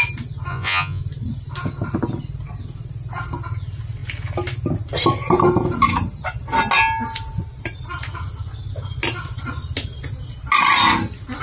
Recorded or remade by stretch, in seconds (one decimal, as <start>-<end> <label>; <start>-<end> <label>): 0.0-0.5 recorded; 0.5-1.0 remade; 1.0-11.4 recorded